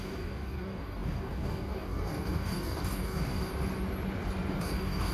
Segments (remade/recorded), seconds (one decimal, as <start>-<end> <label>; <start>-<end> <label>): 0.0-3.5 remade; 3.5-4.6 recorded; 4.6-5.1 remade